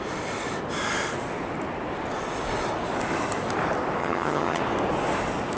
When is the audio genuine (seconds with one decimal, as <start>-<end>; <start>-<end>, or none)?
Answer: 0.0-4.0; 4.6-5.6